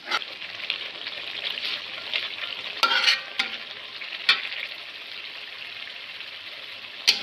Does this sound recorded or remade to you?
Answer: recorded